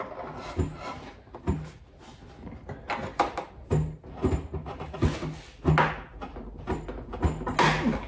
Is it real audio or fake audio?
real